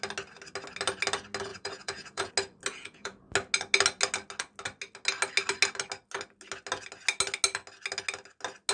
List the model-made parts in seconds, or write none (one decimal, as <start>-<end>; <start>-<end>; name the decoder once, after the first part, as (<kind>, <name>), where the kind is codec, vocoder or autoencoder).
1.5-2.3 (vocoder, Vocos); 2.7-3.2